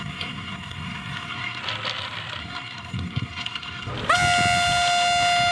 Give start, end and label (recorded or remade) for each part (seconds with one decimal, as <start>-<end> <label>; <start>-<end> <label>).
0.0-1.6 remade; 1.6-2.4 recorded; 2.4-3.9 remade; 3.9-5.5 recorded